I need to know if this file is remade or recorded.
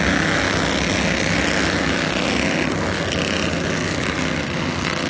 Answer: recorded